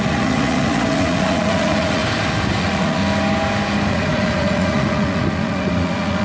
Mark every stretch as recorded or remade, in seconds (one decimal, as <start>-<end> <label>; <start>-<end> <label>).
0.0-2.0 remade; 2.0-2.6 recorded; 2.6-3.0 remade; 3.0-3.9 recorded; 3.9-6.2 remade